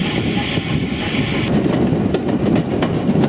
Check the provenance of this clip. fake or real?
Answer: fake